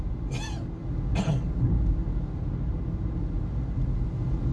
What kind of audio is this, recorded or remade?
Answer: recorded